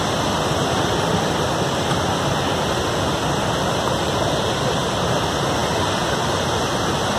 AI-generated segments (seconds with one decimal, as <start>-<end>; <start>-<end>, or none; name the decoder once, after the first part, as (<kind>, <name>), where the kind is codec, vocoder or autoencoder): none